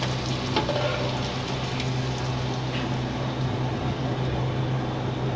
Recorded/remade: recorded